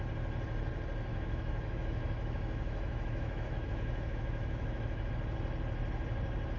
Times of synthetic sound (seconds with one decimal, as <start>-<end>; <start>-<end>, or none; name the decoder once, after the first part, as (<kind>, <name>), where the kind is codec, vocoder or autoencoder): 1.1-5.1 (autoencoder, DAC-VAE)